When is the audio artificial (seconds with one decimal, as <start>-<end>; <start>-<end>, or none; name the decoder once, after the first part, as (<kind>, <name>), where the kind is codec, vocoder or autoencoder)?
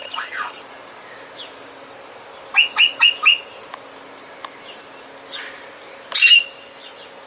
0.0-0.6 (vocoder, HiFi-GAN)